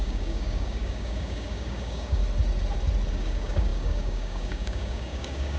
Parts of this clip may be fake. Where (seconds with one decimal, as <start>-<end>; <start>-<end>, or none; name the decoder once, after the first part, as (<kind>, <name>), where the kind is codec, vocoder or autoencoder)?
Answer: 0.0-2.2 (codec, DAC); 3.1-5.6